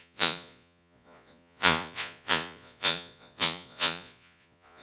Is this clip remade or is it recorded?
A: remade